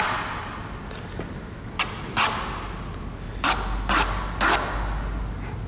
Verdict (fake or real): real